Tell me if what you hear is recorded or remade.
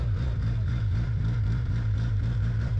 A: remade